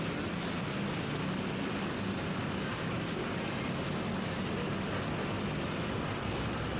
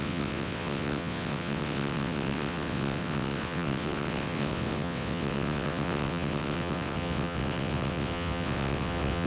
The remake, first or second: second